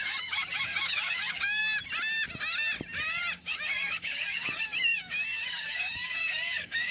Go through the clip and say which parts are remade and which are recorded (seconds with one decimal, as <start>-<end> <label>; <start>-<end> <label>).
0.0-1.6 remade; 1.6-3.4 recorded; 3.4-6.9 remade

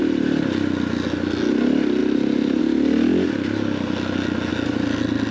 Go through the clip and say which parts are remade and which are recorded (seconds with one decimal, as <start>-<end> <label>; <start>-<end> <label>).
0.0-2.0 recorded; 2.0-2.6 remade; 2.6-5.3 recorded

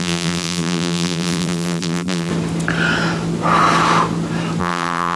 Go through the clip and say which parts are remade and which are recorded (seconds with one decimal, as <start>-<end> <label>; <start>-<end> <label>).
0.0-2.3 remade; 2.3-4.6 recorded; 4.6-5.2 remade

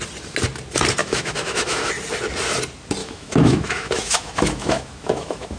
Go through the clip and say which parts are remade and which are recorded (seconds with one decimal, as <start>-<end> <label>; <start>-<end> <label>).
0.0-1.0 recorded; 1.0-1.9 remade; 1.9-3.0 recorded; 3.0-5.6 remade

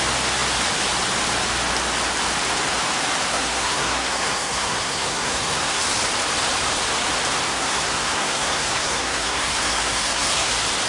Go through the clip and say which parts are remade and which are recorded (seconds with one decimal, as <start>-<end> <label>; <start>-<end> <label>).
0.0-3.3 recorded; 3.3-5.8 remade; 5.8-7.5 recorded; 7.5-10.5 remade; 10.5-10.9 recorded

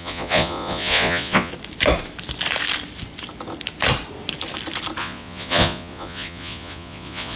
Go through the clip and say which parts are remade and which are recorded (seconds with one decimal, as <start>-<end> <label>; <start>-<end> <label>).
0.0-1.5 remade; 1.5-5.0 recorded; 5.0-7.4 remade

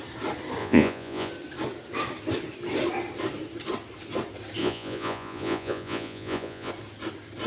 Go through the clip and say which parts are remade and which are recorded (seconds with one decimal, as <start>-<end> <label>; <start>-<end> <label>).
0.0-0.6 recorded; 0.6-1.3 remade; 1.3-4.6 recorded; 4.6-6.7 remade; 6.7-7.5 recorded